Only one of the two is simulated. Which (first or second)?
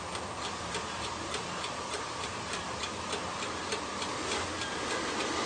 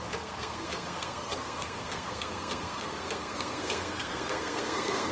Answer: second